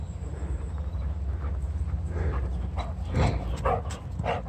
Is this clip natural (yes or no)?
yes